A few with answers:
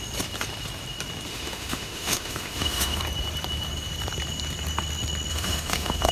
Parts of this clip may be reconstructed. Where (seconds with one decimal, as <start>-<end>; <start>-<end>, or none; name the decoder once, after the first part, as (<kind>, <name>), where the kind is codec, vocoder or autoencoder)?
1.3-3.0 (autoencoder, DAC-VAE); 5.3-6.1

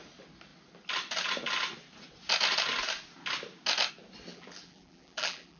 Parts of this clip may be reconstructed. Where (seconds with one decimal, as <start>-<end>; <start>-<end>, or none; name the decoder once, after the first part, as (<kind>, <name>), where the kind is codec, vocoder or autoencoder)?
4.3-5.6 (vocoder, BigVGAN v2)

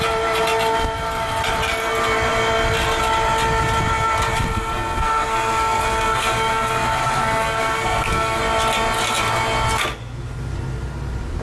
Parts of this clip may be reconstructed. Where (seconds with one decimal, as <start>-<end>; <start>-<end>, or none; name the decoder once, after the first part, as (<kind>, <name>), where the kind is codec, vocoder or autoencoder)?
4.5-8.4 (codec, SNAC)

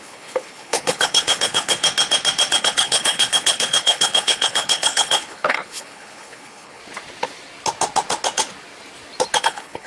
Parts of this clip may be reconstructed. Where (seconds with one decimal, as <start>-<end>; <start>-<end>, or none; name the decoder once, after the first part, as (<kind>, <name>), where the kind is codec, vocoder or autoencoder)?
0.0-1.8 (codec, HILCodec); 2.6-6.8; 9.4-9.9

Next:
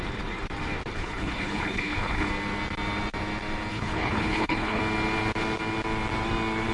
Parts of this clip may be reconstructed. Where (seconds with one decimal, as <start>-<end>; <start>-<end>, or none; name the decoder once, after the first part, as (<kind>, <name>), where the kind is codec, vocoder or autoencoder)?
0.9-2.3 (codec, HILCodec); 3.7-4.8

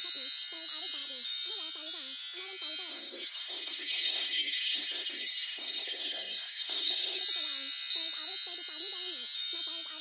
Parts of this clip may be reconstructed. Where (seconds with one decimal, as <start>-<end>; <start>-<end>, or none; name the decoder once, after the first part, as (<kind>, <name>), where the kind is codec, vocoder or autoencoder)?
2.9-7.2 (codec, SNAC)

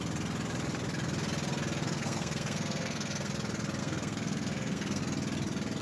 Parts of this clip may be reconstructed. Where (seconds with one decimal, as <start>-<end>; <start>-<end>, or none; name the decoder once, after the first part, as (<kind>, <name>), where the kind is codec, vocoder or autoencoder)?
1.8-3.3 (codec, SNAC); 3.8-5.0